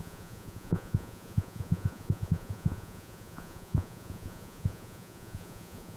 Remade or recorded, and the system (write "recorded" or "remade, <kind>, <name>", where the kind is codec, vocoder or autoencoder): remade, vocoder, Vocos